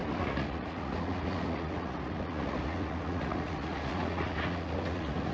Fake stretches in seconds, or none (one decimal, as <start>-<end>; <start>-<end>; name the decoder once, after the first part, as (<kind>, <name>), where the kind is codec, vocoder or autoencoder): 0.0-5.3 (vocoder, Vocos)